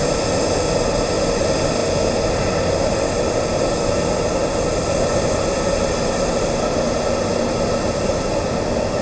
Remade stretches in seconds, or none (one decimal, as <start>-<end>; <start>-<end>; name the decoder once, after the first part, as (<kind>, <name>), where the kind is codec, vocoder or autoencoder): none

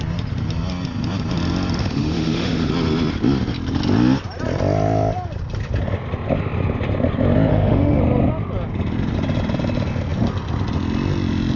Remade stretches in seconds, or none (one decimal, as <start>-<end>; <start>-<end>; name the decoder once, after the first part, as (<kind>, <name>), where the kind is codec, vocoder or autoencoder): 1.8-2.7 (autoencoder, DAC-VAE); 7.5-8.0